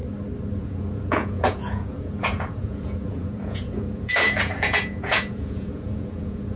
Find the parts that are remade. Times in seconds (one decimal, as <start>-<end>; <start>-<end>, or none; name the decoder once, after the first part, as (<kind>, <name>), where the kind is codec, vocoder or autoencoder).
0.6-6.6 (vocoder, Vocos)